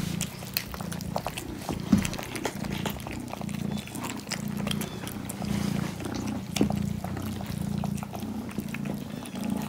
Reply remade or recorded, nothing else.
recorded